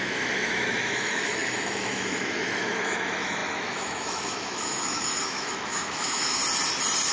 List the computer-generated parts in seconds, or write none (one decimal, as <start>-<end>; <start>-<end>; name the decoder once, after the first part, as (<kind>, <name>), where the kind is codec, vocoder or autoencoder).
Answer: 0.0-6.4 (autoencoder, DAC-VAE)

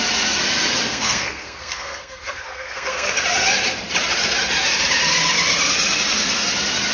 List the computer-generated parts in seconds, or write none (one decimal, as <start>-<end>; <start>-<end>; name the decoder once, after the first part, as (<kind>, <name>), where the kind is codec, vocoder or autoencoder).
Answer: 0.9-3.1 (codec, SNAC)

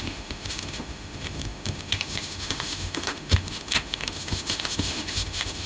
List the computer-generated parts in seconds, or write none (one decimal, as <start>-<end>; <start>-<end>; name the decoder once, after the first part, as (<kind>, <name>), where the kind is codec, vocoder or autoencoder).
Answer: 0.0-5.7 (autoencoder, DAC-VAE)

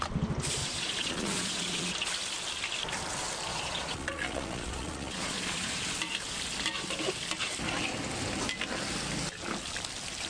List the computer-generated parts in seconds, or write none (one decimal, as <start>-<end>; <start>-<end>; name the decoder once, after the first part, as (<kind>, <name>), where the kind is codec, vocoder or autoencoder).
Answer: 0.6-1.9 (vocoder, Vocos); 3.5-5.9

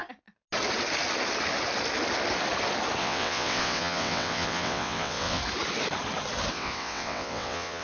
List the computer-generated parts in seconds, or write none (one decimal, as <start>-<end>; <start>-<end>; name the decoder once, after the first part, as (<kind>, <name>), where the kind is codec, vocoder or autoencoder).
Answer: 3.0-5.4 (vocoder, WaveNeXt); 6.5-7.8

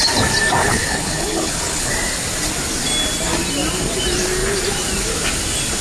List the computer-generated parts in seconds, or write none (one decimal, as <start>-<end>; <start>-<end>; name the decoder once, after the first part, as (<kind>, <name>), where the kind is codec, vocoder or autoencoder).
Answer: 0.6-1.9 (codec, HILCodec)

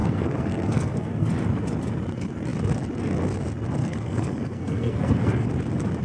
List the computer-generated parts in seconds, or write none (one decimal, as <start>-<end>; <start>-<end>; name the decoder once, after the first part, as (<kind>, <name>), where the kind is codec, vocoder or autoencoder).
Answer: 0.0-1.3 (codec, SNAC); 3.8-5.5

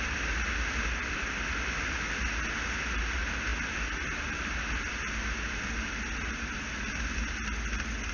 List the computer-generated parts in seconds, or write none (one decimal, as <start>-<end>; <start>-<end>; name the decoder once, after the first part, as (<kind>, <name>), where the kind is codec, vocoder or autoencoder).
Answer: none